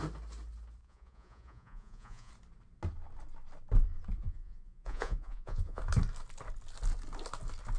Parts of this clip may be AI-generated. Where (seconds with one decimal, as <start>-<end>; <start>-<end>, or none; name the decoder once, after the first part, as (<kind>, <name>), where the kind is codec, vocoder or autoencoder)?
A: 0.8-2.3 (vocoder, Vocos); 4.2-5.8